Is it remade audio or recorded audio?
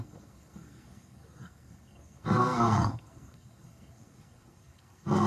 remade